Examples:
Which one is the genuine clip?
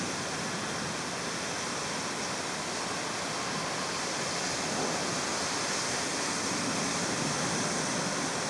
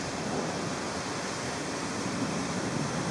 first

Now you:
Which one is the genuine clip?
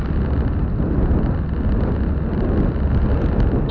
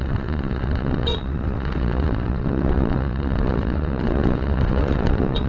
first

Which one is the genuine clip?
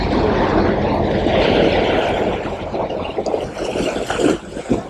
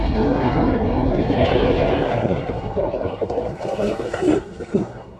first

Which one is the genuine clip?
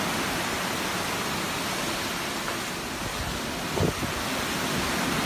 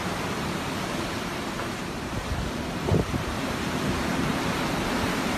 first